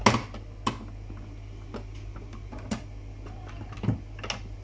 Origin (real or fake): real